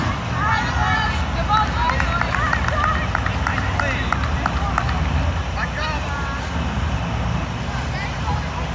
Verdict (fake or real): real